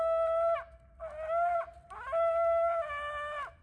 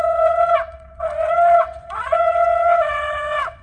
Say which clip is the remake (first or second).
second